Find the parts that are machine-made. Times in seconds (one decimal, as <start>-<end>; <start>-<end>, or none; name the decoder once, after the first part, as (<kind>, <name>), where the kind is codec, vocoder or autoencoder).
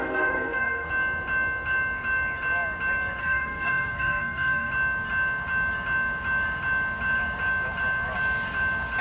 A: 0.0-0.9 (codec, SNAC); 3.2-4.7